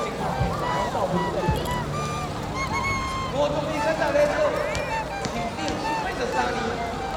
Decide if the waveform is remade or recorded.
recorded